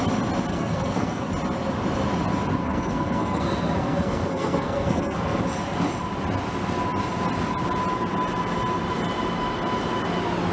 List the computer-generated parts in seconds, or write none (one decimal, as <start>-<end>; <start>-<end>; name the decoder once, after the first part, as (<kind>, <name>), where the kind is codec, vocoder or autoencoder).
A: 0.5-1.3 (codec, SNAC); 2.6-5.4

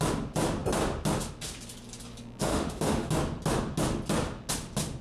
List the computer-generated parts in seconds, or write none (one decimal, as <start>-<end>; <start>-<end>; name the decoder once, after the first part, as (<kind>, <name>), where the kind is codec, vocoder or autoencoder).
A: 2.5-3.1 (autoencoder, DAC-VAE)